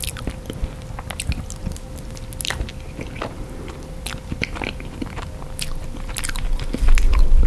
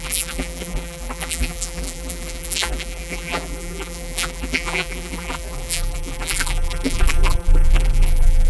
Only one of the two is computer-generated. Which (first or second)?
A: second